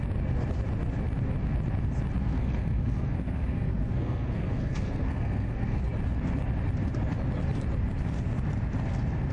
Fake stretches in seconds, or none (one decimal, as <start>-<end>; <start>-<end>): 2.2-5.8